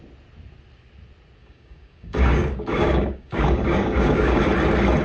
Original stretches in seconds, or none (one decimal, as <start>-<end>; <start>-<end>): 0.0-1.4; 4.4-5.0